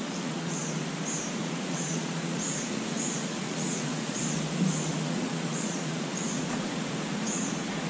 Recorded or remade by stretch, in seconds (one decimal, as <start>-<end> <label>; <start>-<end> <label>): 0.0-0.6 remade; 0.6-1.4 recorded; 1.4-4.2 remade; 4.2-5.0 recorded; 5.0-7.9 remade

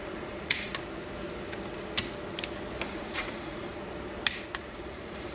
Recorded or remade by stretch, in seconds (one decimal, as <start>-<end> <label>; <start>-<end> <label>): 0.0-0.7 remade; 0.7-2.9 recorded; 2.9-3.7 remade; 3.7-4.6 recorded; 4.6-5.3 remade